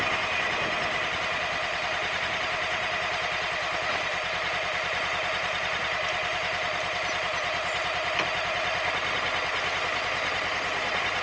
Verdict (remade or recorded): recorded